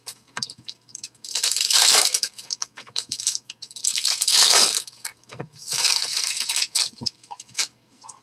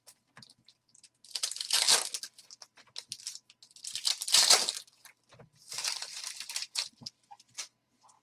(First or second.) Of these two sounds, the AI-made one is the first